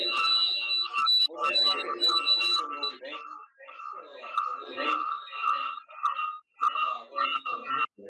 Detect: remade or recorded recorded